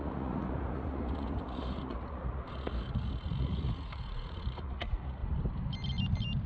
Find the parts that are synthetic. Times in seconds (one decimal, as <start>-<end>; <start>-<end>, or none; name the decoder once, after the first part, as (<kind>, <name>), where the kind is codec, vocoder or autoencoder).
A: 0.0-5.2 (vocoder, Vocos)